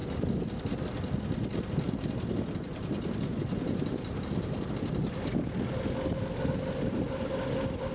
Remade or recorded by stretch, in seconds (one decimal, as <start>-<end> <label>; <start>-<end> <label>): 0.0-7.9 recorded